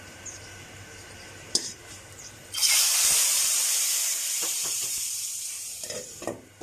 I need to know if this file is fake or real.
fake